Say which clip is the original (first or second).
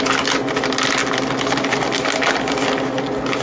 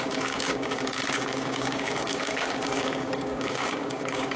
first